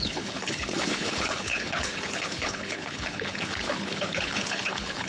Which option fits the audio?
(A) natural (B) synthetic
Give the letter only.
B